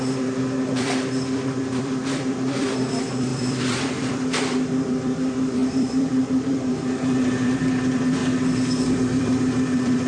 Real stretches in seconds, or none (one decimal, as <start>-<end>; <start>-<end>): 8.2-8.8

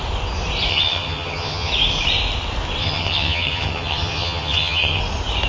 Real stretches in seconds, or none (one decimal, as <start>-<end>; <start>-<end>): 0.0-0.7; 1.7-2.8; 5.0-5.5